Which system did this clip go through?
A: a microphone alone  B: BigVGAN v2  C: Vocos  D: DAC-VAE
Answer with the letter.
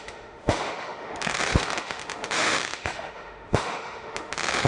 D